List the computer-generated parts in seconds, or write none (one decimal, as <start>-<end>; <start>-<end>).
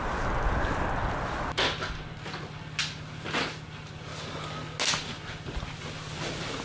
none